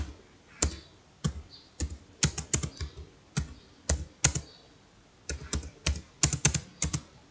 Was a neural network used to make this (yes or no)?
no